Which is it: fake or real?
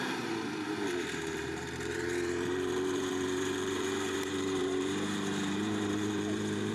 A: fake